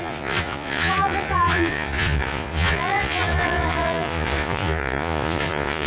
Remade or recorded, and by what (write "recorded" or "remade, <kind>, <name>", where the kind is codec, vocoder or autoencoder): remade, vocoder, Vocos